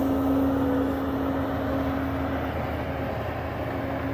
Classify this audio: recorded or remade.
recorded